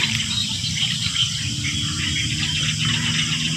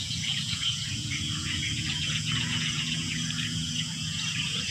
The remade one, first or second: second